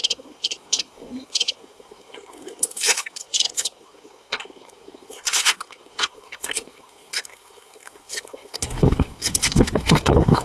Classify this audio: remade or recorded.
remade